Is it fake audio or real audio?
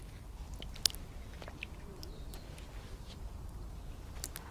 real